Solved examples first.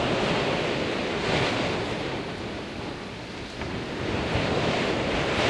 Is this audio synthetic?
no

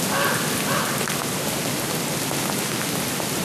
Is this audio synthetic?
no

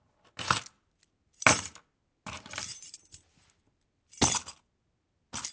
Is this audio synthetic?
no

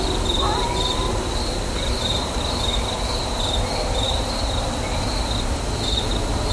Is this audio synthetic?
no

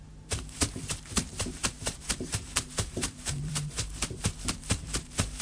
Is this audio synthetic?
yes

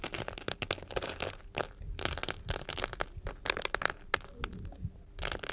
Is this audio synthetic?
no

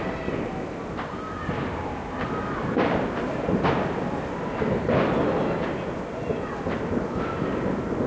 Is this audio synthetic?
no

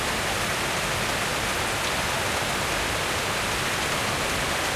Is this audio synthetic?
no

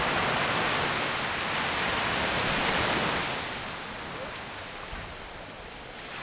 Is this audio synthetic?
no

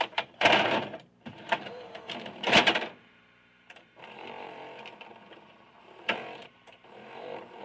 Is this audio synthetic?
yes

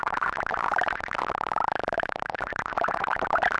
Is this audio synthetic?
yes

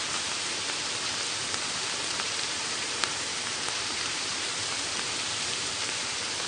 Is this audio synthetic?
yes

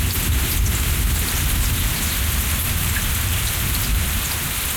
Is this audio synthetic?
yes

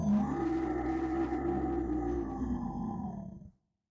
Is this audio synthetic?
no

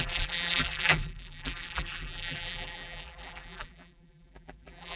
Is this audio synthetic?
yes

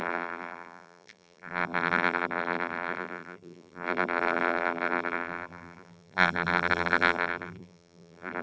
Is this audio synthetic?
yes